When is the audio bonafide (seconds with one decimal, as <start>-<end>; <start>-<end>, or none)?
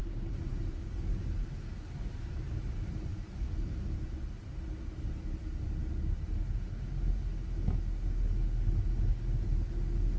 2.5-5.8; 6.3-10.2